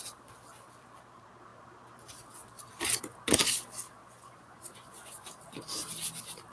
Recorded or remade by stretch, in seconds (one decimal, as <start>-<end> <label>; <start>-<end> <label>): 0.0-4.0 recorded; 4.0-5.3 remade; 5.3-6.5 recorded